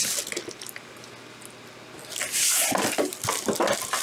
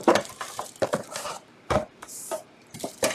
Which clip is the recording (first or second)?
first